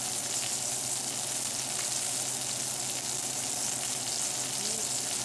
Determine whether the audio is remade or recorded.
recorded